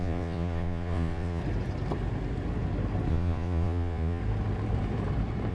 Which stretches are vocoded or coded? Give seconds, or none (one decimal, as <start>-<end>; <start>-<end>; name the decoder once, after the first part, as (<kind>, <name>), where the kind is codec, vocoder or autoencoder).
0.0-1.4 (vocoder, Vocos); 3.1-4.2